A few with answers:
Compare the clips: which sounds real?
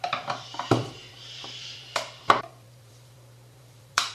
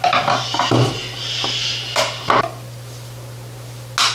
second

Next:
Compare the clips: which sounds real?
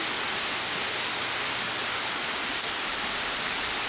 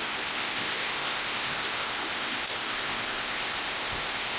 first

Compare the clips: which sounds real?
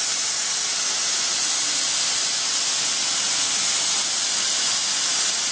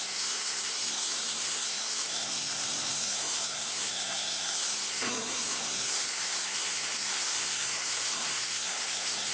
first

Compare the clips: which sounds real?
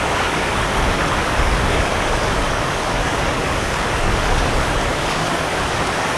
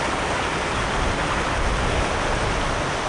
second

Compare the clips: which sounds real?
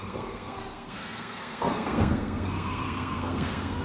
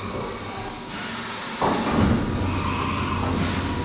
second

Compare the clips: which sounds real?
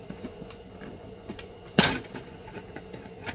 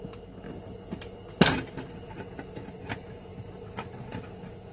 second